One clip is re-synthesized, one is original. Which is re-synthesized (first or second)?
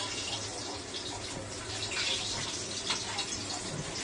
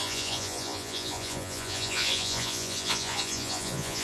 second